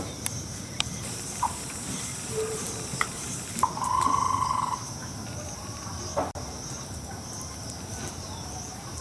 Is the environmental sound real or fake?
fake